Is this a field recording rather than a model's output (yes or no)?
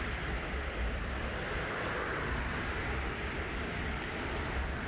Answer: yes